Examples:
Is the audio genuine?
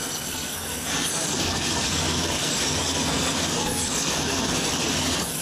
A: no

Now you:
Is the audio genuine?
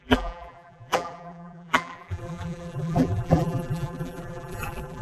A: no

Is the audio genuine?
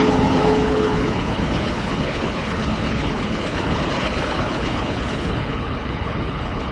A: no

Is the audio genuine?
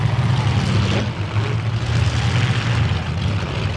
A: yes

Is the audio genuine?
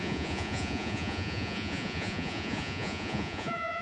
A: no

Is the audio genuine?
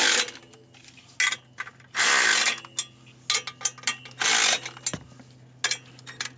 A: yes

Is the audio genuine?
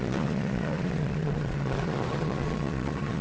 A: no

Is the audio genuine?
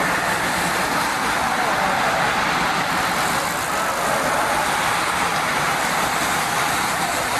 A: yes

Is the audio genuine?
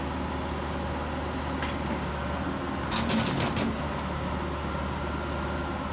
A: yes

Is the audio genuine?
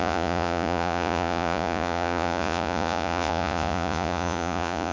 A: no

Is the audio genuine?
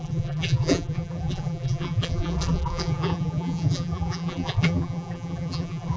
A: no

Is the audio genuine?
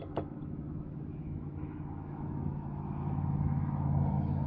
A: no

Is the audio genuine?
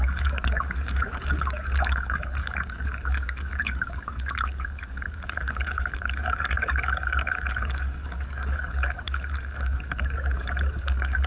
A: no